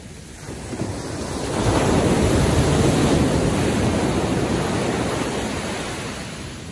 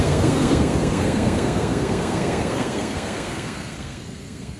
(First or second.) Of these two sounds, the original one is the first